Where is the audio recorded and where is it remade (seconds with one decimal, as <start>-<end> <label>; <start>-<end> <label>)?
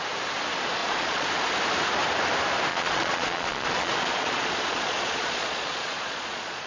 0.0-0.8 recorded; 0.8-1.3 remade; 1.3-2.7 recorded; 2.7-6.7 remade